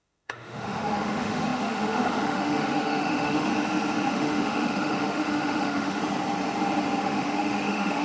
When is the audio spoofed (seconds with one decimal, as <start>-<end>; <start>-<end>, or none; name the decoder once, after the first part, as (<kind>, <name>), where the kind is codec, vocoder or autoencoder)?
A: 0.0-3.5 (autoencoder, DAC-VAE); 4.1-6.0; 7.0-8.0

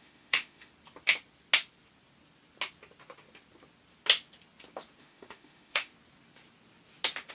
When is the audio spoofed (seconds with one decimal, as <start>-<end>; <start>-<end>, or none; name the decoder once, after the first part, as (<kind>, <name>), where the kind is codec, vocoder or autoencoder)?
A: 0.0-0.7 (autoencoder, DAC-VAE); 5.0-5.9

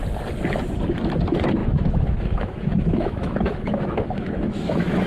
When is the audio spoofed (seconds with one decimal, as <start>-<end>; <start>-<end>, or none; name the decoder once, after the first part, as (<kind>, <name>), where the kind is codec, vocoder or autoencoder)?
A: 1.6-5.1 (autoencoder, DAC-VAE)

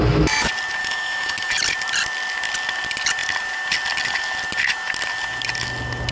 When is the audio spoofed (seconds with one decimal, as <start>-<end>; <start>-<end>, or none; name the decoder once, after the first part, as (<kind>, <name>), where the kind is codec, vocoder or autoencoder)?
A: 0.8-1.5 (autoencoder, DAC-VAE)

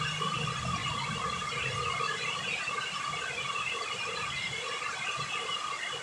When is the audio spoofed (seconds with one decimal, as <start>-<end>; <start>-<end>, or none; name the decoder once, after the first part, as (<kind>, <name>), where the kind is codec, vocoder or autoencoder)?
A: none

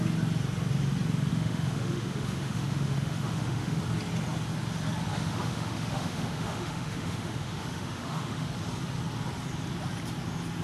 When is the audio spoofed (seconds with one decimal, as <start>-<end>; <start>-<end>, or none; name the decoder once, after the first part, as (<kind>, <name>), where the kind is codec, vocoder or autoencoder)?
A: 1.3-3.8 (autoencoder, DAC-VAE); 5.1-8.5

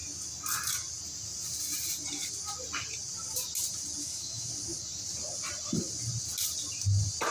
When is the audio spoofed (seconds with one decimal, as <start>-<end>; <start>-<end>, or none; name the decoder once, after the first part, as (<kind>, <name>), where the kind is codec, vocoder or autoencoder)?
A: 4.0-4.5 (autoencoder, DAC-VAE)